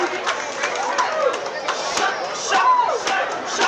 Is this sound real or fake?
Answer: real